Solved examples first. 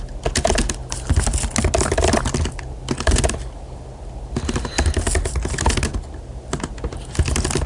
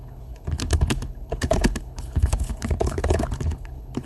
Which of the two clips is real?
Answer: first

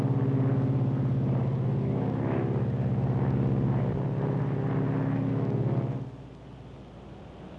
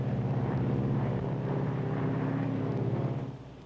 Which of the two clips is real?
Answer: first